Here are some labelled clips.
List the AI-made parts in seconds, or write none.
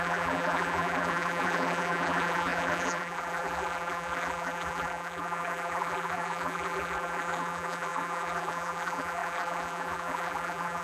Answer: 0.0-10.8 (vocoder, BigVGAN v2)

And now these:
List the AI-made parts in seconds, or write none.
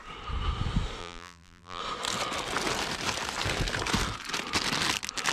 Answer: 1.0-1.8 (vocoder, BigVGAN v2)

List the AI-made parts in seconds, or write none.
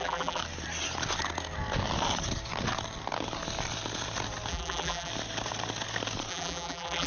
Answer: 0.0-0.4 (vocoder, BigVGAN v2); 4.5-5.1; 6.3-7.1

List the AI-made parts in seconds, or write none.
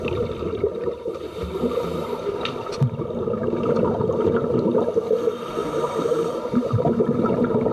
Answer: 0.7-2.5 (vocoder, BigVGAN v2); 5.6-6.9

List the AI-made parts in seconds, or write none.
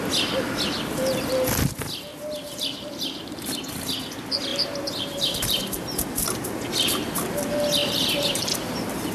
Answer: 2.1-3.5 (vocoder, BigVGAN v2); 4.5-5.6; 7.8-8.5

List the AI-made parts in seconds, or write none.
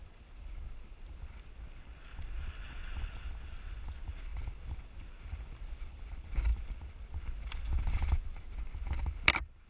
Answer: none